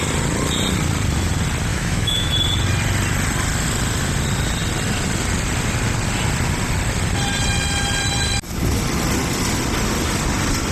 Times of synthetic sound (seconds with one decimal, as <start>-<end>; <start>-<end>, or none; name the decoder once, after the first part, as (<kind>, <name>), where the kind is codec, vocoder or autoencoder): 1.7-2.3 (autoencoder, DAC-VAE)